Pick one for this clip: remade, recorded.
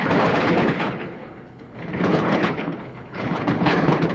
remade